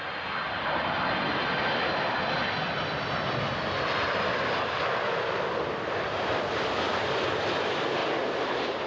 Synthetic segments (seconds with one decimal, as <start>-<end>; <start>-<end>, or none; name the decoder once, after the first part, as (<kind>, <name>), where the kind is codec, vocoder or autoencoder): none